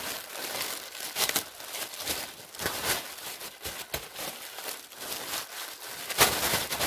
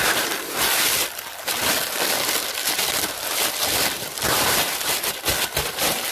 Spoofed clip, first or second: second